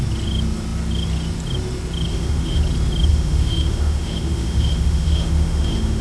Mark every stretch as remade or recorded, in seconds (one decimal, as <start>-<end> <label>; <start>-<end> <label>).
0.0-2.1 recorded; 2.1-2.6 remade; 2.6-3.1 recorded; 3.1-6.0 remade